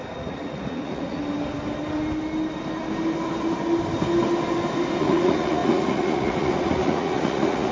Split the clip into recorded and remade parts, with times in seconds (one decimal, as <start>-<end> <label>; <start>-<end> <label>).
0.0-1.2 remade; 1.2-5.0 recorded; 5.0-7.7 remade